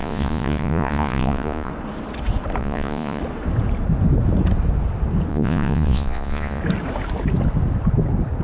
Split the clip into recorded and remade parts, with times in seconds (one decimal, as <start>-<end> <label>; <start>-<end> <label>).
0.0-1.7 remade; 1.7-2.6 recorded; 2.6-3.2 remade; 3.2-5.3 recorded; 5.3-6.6 remade; 6.6-8.4 recorded